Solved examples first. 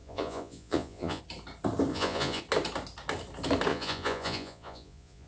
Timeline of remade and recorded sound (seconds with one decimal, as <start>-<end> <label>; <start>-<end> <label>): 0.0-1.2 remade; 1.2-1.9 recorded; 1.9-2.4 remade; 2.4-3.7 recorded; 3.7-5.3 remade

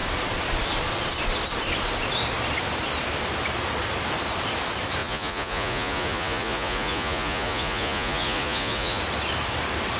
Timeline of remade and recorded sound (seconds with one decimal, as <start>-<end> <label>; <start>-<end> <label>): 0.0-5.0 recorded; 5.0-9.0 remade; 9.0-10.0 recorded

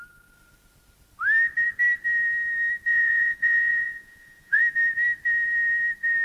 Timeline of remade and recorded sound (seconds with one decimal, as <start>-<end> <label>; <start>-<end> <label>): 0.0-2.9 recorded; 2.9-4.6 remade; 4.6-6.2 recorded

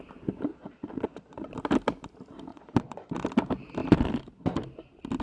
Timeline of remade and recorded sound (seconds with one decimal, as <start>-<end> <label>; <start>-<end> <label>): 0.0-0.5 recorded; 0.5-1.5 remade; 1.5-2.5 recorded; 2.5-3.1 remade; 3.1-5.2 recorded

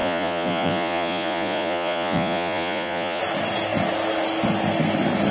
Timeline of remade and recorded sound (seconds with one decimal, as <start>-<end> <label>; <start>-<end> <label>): 0.0-3.2 remade; 3.2-5.3 recorded

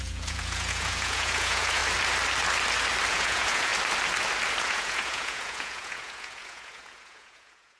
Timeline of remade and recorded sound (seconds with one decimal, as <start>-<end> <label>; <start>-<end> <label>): 0.0-1.8 remade; 1.8-3.1 recorded; 3.1-3.7 remade; 3.7-4.6 recorded; 4.6-7.8 remade